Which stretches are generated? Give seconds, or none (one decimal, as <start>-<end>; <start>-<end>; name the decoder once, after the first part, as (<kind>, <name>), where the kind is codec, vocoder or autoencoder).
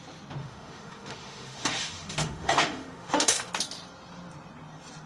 0.4-3.5 (autoencoder, DAC-VAE)